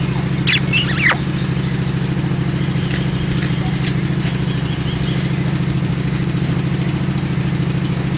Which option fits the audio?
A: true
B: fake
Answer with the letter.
A